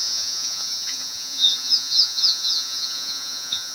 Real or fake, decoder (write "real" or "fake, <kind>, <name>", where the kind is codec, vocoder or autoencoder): fake, vocoder, Vocos